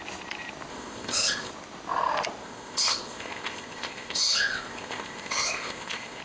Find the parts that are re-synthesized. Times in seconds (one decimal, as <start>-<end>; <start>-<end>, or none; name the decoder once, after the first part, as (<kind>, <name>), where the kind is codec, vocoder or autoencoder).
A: 0.7-1.5 (codec, ZipCodec); 2.4-6.2